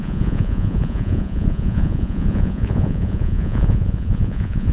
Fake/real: fake